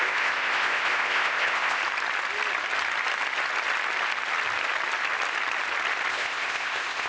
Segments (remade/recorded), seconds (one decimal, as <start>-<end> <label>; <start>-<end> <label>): 0.0-1.8 remade; 1.8-6.1 recorded; 6.1-7.1 remade